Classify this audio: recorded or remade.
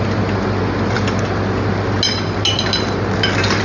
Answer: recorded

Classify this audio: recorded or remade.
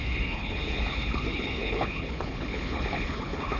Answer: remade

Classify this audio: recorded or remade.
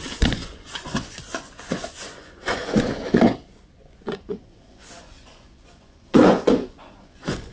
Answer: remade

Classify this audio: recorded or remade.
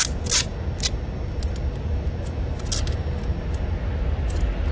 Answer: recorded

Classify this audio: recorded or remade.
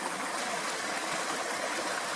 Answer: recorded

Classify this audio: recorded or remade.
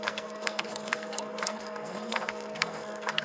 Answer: remade